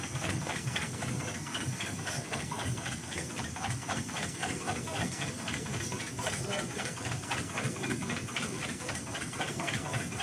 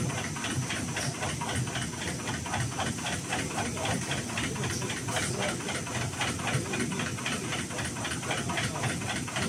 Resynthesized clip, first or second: first